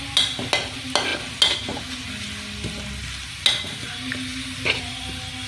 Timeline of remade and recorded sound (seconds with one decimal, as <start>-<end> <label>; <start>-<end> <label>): 0.0-5.5 recorded